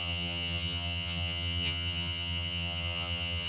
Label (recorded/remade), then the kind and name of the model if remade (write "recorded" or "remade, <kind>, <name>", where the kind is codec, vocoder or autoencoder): remade, vocoder, HiFi-GAN